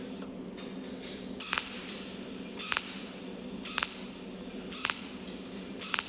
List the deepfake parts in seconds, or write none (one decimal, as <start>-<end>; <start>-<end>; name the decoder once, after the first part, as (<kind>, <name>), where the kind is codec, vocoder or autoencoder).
none